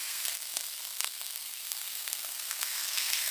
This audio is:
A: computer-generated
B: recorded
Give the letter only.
A